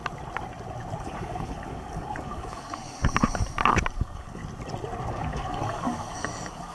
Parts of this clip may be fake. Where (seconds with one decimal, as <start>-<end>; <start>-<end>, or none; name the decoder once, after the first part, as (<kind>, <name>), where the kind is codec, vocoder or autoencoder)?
1.0-3.0 (codec, DAC); 4.0-4.4; 5.1-6.7

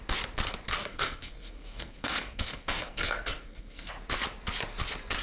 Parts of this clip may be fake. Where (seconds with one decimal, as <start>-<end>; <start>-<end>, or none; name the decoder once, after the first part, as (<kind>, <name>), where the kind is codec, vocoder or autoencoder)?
0.8-3.9 (codec, SNAC)

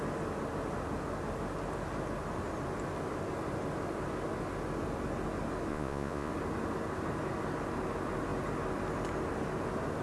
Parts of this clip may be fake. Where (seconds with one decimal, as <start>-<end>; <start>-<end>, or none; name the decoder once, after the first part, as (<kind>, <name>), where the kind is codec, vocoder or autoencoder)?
5.7-6.3 (vocoder, Vocos)

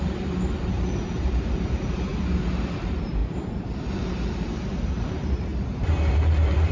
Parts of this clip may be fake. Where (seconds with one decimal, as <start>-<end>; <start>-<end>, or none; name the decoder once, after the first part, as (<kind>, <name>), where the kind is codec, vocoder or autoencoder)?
0.0-2.1 (vocoder, BigVGAN v2); 2.8-3.2; 3.9-5.5; 6.1-6.7

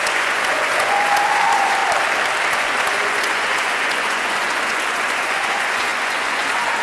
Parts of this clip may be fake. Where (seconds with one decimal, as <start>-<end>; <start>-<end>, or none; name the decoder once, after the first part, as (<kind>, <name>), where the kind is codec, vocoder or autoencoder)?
0.0-1.8 (vocoder, Vocos); 2.5-6.8

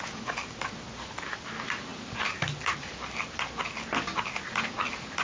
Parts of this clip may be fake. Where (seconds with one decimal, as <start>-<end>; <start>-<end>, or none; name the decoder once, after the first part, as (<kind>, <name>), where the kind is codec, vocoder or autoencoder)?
none

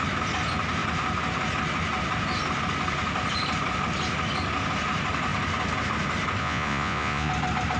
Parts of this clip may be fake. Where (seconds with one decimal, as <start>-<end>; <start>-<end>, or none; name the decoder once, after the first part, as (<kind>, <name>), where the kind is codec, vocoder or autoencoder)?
6.4-7.3 (vocoder, Vocos)

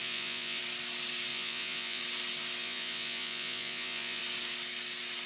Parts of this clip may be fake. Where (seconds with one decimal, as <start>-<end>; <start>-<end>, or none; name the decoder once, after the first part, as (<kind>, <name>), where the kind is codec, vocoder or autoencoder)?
0.0-0.6 (vocoder, Vocos); 1.3-2.0; 2.6-4.2